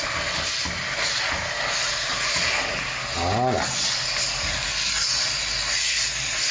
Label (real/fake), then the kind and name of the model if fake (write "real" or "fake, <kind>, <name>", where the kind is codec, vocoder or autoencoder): real